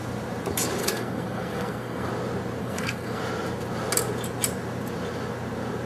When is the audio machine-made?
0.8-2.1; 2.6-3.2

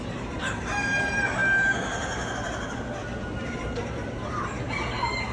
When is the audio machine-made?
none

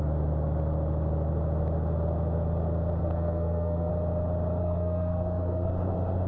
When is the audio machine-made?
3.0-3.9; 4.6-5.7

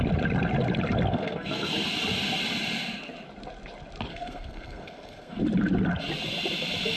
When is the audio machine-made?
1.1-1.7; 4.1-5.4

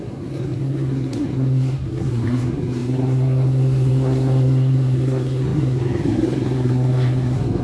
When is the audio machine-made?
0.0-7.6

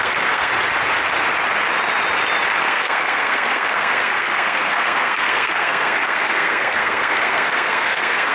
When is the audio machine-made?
0.0-0.5; 2.6-8.3